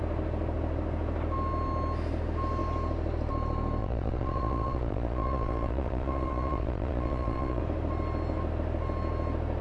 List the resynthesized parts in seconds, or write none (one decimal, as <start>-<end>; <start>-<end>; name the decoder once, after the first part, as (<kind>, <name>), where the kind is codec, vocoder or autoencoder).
3.8-7.6 (vocoder, Vocos)